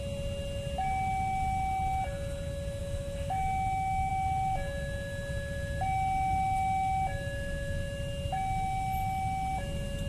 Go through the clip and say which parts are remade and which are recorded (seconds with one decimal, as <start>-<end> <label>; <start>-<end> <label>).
0.0-2.8 recorded; 2.8-4.1 remade; 4.1-10.1 recorded